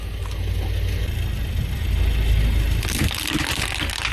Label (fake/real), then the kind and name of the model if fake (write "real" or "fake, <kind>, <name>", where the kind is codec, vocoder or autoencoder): real